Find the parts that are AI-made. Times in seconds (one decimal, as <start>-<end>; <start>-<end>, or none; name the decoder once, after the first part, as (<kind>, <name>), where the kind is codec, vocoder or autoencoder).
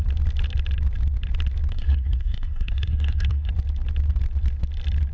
1.7-3.5 (codec, SNAC)